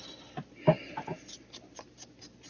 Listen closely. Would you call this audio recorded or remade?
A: recorded